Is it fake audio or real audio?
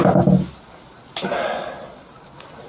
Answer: real